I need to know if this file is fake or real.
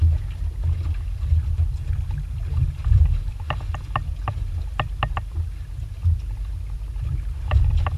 real